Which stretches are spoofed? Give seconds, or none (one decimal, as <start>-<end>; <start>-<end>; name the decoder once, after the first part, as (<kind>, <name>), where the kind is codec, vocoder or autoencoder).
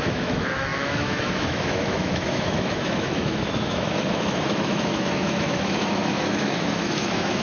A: 0.0-7.4 (autoencoder, DAC-VAE)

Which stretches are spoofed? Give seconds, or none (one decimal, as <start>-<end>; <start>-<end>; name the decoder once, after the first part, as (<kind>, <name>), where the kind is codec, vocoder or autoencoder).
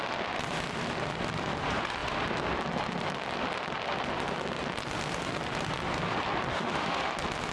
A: 6.5-7.1 (autoencoder, DAC-VAE)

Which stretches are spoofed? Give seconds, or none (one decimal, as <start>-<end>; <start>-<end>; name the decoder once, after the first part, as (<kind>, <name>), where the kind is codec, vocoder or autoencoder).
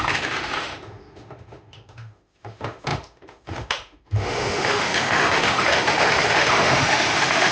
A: 0.0-7.5 (autoencoder, DAC-VAE)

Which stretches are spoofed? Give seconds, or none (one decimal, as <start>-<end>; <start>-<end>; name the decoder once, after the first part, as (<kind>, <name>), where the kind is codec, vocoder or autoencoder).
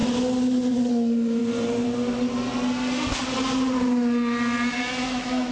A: 0.9-1.4 (autoencoder, DAC-VAE); 4.7-5.5